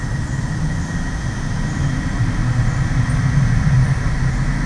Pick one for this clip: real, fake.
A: real